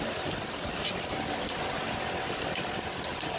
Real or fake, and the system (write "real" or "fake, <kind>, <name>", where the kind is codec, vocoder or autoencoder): real